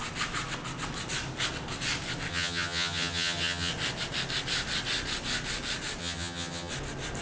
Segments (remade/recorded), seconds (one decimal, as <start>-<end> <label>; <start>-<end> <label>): 0.0-2.3 recorded; 2.3-3.7 remade; 3.7-6.0 recorded; 6.0-6.7 remade; 6.7-7.2 recorded